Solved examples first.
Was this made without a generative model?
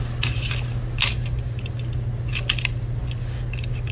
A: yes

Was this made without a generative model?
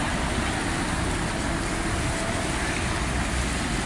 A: yes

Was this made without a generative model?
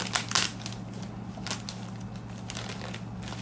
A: yes